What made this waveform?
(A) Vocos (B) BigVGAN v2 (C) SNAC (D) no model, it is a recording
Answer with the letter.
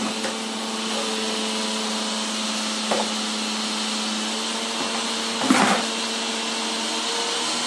D